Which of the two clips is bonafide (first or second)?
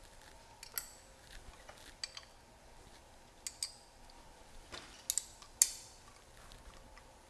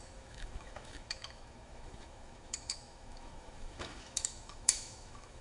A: first